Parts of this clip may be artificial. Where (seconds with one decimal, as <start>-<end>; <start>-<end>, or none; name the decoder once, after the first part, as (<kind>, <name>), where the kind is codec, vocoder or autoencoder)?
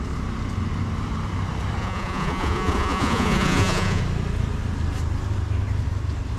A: 1.8-4.0 (vocoder, Vocos)